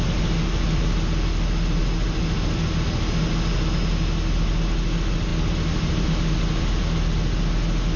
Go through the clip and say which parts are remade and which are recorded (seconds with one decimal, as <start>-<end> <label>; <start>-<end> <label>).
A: 0.0-8.0 recorded